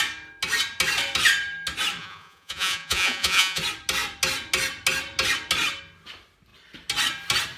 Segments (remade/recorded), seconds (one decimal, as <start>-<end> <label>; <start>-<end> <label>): 0.0-2.0 recorded; 2.0-3.6 remade; 3.6-7.6 recorded